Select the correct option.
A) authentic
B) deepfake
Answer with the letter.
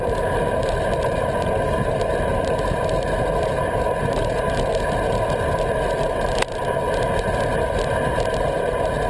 A